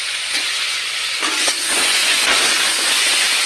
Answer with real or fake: fake